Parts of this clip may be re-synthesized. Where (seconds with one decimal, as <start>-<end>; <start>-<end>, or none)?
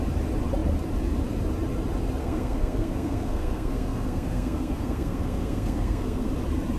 2.2-6.3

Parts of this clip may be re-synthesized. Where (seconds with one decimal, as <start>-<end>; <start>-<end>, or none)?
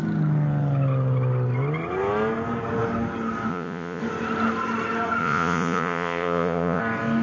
3.5-4.0; 5.2-6.8